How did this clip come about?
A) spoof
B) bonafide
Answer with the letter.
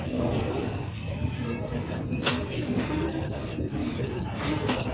A